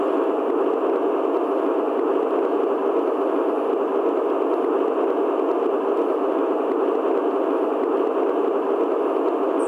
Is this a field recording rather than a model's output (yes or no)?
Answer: yes